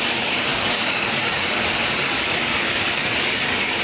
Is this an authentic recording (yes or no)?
no